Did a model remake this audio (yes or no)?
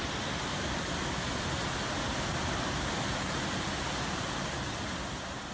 no